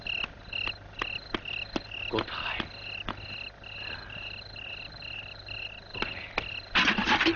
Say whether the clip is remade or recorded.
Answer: recorded